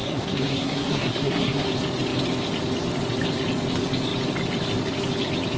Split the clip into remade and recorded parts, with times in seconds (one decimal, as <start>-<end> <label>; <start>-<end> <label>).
0.0-1.7 remade; 1.7-5.6 recorded